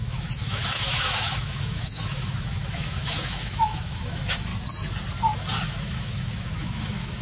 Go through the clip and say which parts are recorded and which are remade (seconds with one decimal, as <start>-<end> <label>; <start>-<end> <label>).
0.0-4.5 remade; 4.5-5.7 recorded; 5.7-7.2 remade